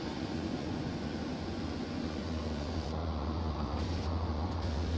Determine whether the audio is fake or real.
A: fake